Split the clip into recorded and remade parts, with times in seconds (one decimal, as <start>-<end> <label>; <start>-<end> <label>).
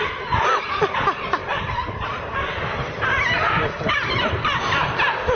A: 0.0-1.4 remade; 1.4-3.9 recorded; 3.9-5.4 remade